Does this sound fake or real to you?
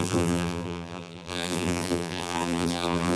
fake